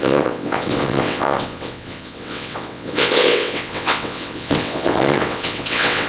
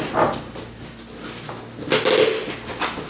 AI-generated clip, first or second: first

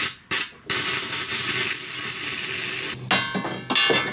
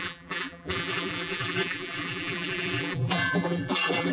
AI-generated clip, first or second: second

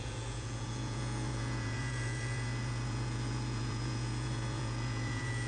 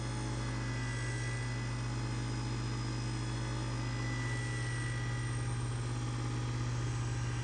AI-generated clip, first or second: first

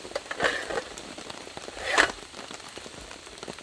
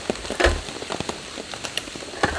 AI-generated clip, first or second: first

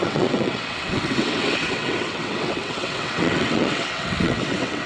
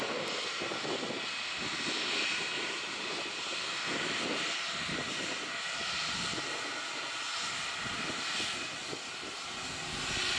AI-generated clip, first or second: first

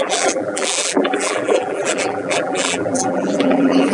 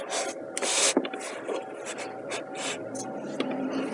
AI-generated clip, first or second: first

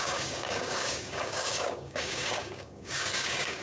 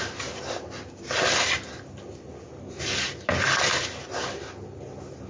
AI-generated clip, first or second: first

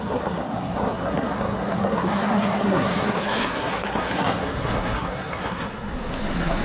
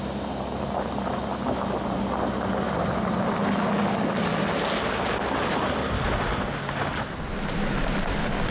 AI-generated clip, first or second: first